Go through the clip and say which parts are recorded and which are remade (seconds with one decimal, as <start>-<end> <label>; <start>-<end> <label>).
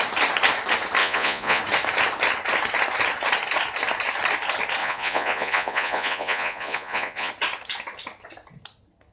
0.0-1.0 recorded; 1.0-1.6 remade; 1.6-4.8 recorded; 4.8-7.3 remade; 7.3-9.1 recorded